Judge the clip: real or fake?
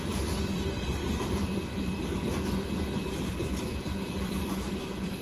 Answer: fake